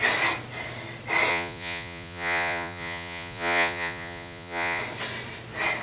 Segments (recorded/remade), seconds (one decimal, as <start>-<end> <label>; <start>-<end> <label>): 0.0-1.3 recorded; 1.3-4.8 remade; 4.8-5.8 recorded